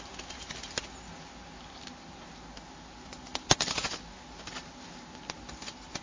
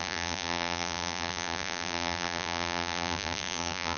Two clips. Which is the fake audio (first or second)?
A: second